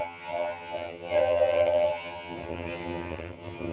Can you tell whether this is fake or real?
fake